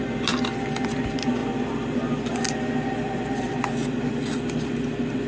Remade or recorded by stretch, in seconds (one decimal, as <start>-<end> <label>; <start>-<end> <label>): 0.0-5.3 recorded